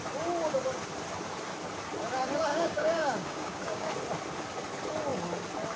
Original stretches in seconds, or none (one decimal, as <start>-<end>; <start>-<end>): 0.0-2.5; 3.9-5.8